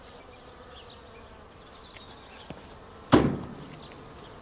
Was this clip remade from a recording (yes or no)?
no